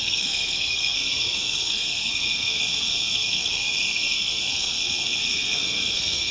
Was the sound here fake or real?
fake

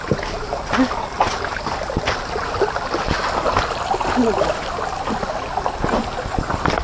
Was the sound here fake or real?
real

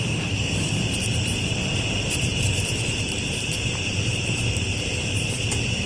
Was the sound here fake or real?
fake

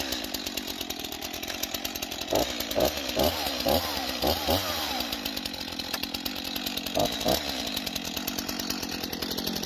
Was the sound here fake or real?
real